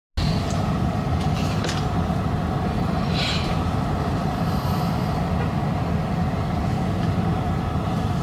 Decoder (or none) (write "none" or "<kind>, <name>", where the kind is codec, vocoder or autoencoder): none